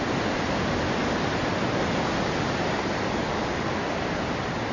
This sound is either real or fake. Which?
real